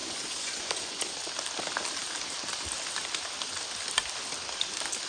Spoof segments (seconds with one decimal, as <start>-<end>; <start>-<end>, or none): 0.0-1.1